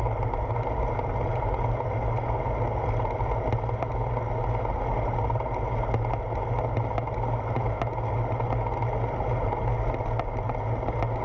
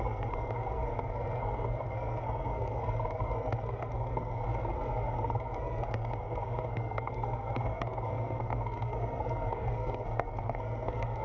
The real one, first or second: first